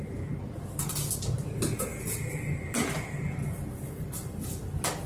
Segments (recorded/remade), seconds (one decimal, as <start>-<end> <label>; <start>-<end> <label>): 0.0-5.1 recorded